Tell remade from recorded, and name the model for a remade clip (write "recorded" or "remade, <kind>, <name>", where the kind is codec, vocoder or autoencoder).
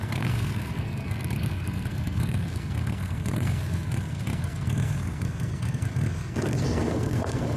remade, codec, SNAC